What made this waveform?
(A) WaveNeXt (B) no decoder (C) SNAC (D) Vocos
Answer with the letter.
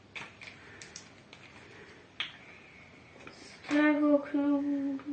B